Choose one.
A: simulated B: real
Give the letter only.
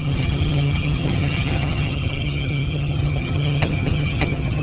A